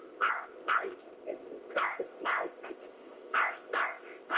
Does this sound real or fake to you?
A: fake